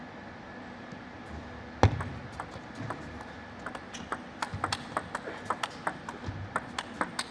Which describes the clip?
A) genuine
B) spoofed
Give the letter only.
A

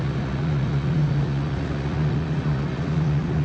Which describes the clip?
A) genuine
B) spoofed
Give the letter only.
B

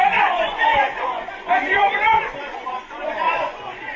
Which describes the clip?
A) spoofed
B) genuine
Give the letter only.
A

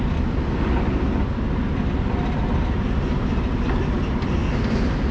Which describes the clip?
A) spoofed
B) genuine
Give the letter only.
B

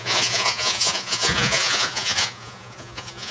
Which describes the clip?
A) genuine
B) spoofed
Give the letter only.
B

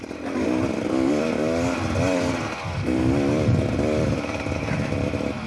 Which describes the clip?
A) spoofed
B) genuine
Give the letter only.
A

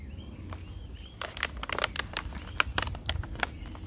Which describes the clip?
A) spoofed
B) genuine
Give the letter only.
B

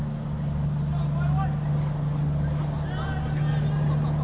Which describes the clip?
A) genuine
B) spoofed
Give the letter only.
A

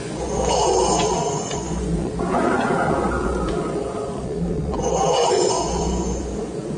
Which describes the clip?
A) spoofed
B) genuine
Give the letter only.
A